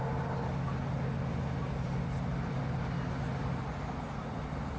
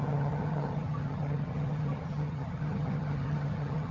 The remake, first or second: second